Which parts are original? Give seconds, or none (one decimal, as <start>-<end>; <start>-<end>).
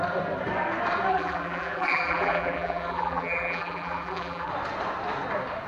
0.0-1.1; 4.5-5.7